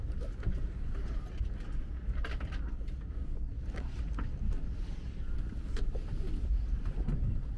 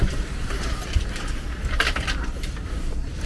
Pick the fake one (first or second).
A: second